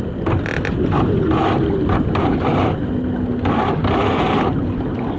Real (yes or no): yes